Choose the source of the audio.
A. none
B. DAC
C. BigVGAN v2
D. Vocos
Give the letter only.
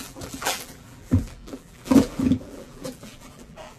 C